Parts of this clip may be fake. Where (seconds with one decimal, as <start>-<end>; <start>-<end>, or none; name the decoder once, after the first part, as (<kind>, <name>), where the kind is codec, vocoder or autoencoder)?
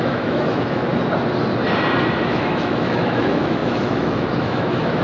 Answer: 0.0-0.9 (autoencoder, DAC-VAE); 2.2-5.0